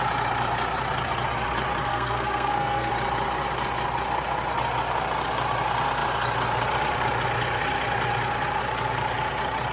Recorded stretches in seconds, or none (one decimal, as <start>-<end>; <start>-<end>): 0.0-1.9; 2.9-9.7